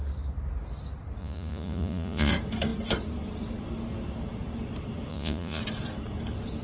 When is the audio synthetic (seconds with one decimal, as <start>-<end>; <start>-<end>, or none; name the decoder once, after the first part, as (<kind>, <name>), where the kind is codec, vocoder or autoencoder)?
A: 1.2-2.3 (vocoder, Vocos); 5.1-5.6